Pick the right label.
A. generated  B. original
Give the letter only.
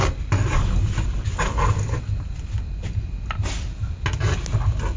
B